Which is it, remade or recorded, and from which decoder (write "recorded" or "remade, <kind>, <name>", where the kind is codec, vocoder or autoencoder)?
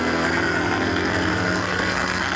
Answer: remade, codec, SNAC